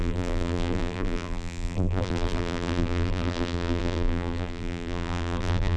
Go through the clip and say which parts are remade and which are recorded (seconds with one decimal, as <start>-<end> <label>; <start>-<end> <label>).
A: 0.0-5.8 remade